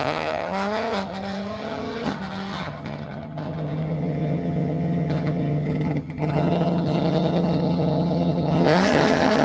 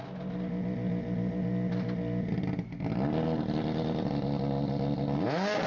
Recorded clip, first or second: second